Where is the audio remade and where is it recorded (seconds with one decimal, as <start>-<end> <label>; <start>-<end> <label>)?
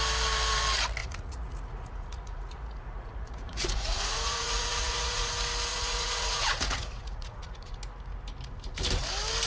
0.0-1.0 recorded; 1.0-5.3 remade; 5.3-5.7 recorded; 5.7-7.8 remade; 7.8-9.5 recorded